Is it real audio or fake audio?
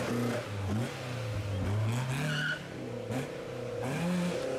real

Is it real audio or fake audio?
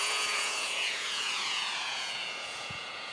fake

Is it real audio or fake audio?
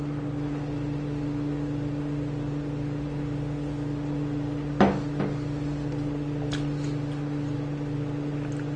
real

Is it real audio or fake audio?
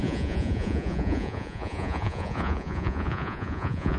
fake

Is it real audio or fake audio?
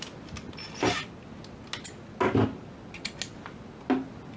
real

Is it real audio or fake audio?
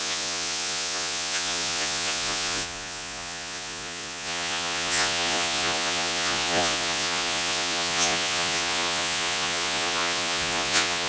fake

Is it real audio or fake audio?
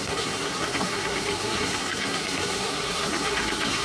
fake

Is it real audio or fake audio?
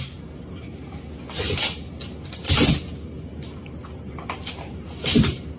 real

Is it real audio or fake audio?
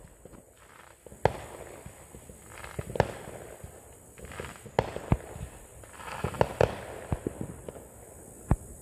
real